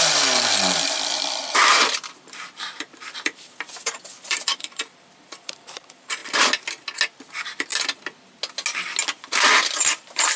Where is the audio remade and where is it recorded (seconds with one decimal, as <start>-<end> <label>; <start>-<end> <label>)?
0.0-6.2 remade; 6.2-7.3 recorded; 7.3-7.7 remade; 7.7-9.1 recorded; 9.1-10.4 remade